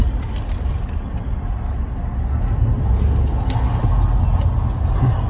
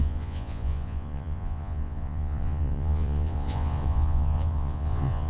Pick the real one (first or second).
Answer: first